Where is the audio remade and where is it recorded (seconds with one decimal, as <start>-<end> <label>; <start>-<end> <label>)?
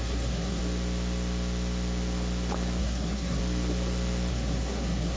0.0-0.6 remade; 0.6-2.8 recorded; 2.8-3.4 remade; 3.4-4.3 recorded; 4.3-5.2 remade